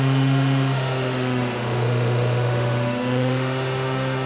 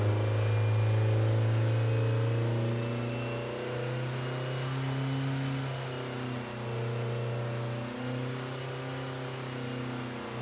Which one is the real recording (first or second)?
second